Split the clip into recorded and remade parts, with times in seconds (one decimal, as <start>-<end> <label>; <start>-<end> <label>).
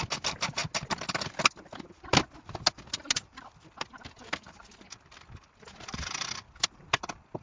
0.0-7.4 recorded